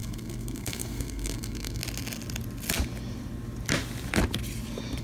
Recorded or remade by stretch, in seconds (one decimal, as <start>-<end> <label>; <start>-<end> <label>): 0.0-1.8 remade; 1.8-5.0 recorded